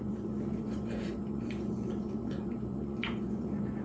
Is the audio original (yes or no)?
no